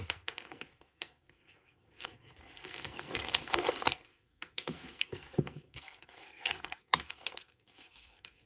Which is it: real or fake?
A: fake